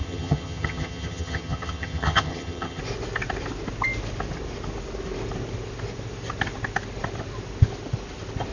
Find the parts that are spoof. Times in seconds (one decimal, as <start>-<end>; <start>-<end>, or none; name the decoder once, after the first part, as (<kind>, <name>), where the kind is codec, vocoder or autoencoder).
0.0-2.8 (vocoder, HiFi-GAN)